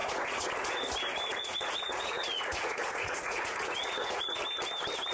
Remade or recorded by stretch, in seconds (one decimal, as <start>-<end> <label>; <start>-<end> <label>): 0.0-0.5 remade; 0.5-1.3 recorded; 1.3-4.4 remade; 4.4-5.1 recorded